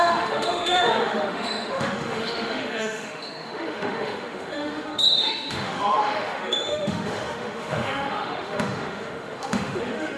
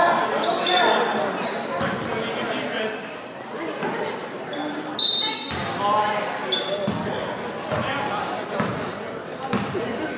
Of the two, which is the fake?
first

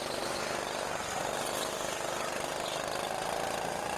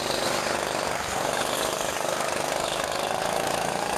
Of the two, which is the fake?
second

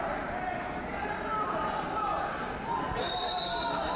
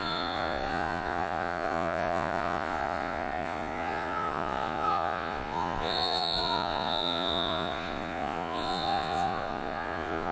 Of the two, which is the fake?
second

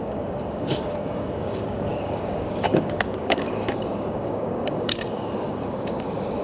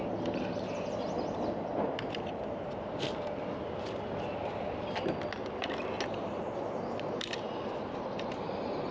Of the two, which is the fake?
first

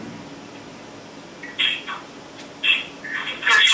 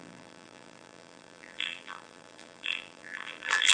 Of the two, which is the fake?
second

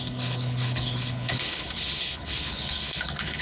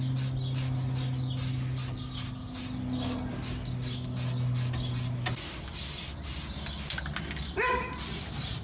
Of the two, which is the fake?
first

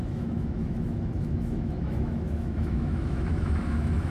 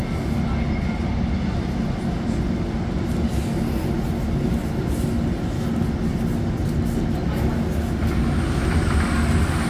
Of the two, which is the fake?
first